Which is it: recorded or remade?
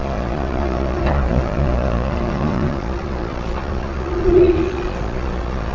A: remade